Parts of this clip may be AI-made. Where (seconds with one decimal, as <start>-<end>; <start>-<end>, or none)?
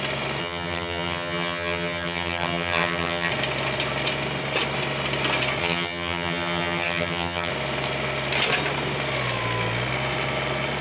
0.4-3.3; 5.6-7.5